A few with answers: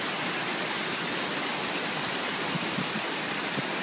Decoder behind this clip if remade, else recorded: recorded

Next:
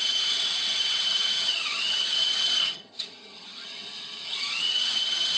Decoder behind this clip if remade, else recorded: remade, vocoder, HiFi-GAN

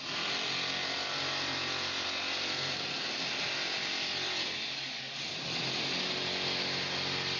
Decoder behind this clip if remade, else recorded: recorded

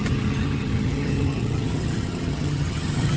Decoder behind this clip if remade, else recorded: remade, vocoder, HiFi-GAN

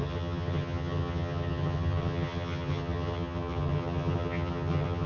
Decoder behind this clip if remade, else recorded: remade, vocoder, HiFi-GAN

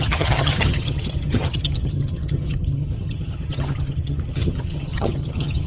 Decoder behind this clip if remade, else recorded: remade, vocoder, HiFi-GAN